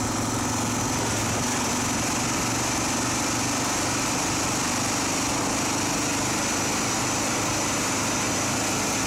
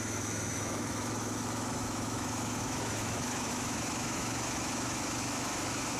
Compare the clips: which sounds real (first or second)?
first